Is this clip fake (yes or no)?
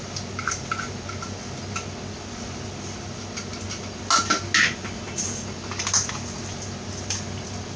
no